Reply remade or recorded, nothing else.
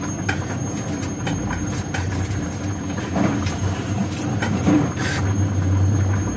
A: remade